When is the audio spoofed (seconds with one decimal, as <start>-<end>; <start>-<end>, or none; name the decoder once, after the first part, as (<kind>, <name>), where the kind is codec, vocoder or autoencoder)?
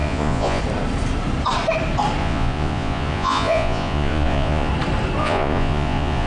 0.0-0.6 (vocoder, Vocos); 2.2-4.7; 5.2-6.3